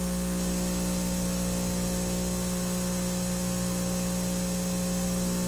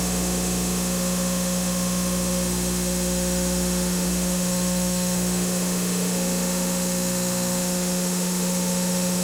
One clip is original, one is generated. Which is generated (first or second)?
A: second